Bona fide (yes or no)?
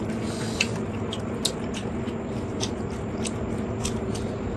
yes